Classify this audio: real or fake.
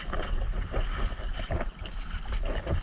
real